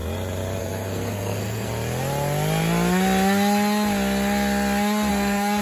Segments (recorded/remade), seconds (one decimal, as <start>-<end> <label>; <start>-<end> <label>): 0.0-0.6 recorded; 0.6-1.7 remade; 1.7-5.1 recorded; 5.1-5.6 remade